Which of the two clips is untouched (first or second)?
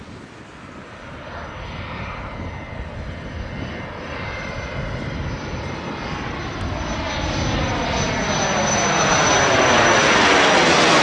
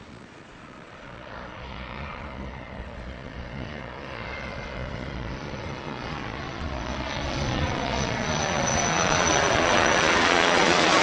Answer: first